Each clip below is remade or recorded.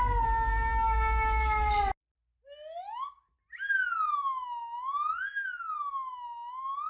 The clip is recorded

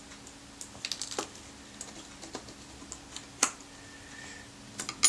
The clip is recorded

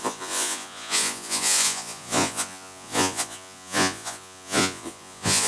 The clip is remade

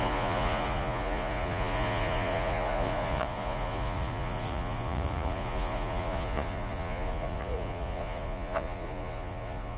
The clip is remade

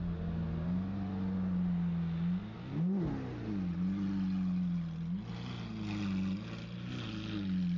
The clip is recorded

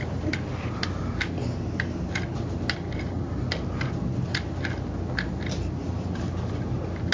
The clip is recorded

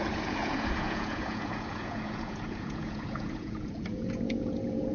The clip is remade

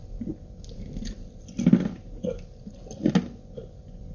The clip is recorded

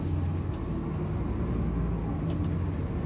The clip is recorded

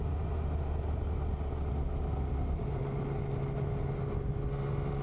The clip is recorded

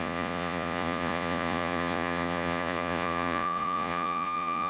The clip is remade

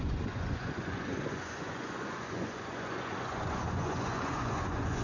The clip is remade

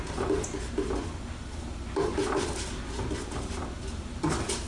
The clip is recorded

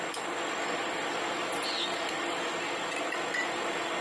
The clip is recorded